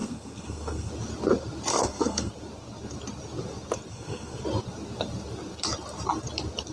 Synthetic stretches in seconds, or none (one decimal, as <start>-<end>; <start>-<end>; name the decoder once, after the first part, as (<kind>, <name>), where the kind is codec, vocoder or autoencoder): 0.0-0.9 (codec, SNAC); 1.7-2.3; 3.9-4.4